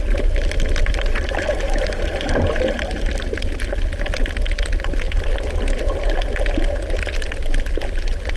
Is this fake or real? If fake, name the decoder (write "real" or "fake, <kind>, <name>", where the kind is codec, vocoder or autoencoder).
real